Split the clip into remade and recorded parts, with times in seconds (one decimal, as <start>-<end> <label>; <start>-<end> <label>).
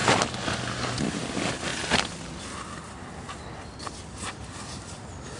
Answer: 0.0-5.4 recorded